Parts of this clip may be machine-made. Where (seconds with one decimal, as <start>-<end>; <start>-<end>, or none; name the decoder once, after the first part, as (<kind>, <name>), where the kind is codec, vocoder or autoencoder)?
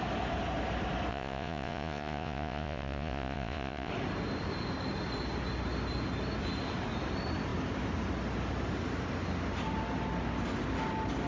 1.1-3.9 (vocoder, Vocos)